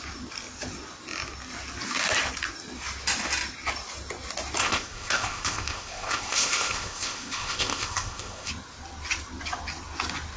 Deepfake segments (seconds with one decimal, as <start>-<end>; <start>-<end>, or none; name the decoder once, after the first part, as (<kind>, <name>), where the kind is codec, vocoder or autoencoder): 4.6-8.5 (codec, ZipCodec)